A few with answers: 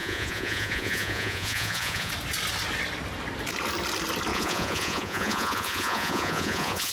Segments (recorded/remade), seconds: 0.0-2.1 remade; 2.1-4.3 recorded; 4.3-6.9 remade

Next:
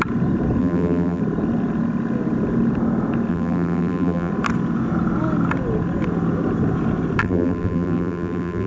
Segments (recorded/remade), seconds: 0.0-0.6 recorded; 0.6-1.2 remade; 1.2-3.3 recorded; 3.3-4.3 remade; 4.3-7.2 recorded; 7.2-8.7 remade

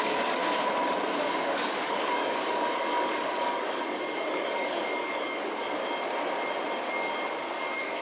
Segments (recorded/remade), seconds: 0.0-0.4 remade; 0.4-1.4 recorded; 1.4-5.8 remade; 5.8-7.4 recorded; 7.4-8.0 remade

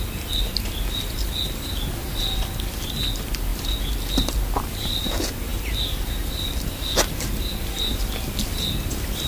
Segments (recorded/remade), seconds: 0.0-5.5 recorded; 5.5-6.1 remade; 6.1-9.3 recorded

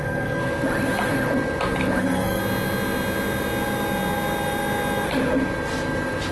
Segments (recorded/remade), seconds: 0.0-0.4 remade; 0.4-2.0 recorded; 2.0-2.4 remade; 2.4-6.3 recorded